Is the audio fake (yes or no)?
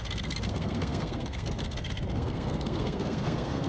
yes